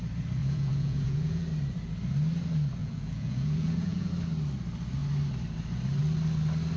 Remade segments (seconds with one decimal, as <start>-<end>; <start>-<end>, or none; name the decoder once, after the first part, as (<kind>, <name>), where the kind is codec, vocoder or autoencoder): 0.4-1.4 (vocoder, Vocos); 2.8-4.1

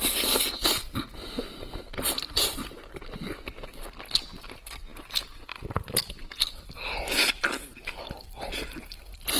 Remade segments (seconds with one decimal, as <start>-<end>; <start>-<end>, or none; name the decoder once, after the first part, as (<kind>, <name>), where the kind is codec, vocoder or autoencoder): none

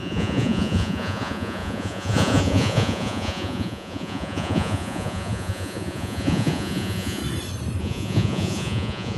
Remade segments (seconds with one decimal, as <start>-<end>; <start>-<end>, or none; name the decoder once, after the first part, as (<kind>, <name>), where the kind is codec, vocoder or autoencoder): 0.0-7.2 (vocoder, Vocos); 7.8-9.2

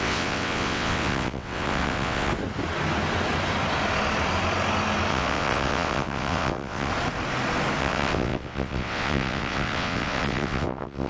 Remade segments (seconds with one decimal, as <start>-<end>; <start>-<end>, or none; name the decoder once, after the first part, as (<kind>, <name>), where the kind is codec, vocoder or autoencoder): 0.0-2.3 (vocoder, WaveNeXt); 5.1-6.9; 7.8-11.1

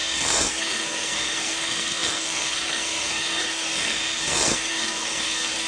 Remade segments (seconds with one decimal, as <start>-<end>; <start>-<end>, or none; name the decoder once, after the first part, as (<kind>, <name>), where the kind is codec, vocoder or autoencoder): 0.0-5.7 (codec, SNAC)